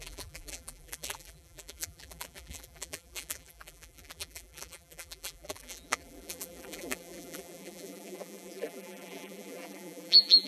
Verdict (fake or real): fake